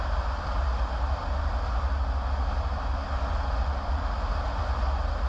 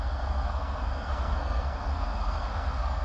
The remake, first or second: second